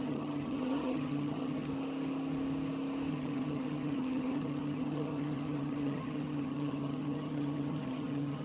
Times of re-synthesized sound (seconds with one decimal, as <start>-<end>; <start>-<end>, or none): 0.0-1.7; 3.1-8.4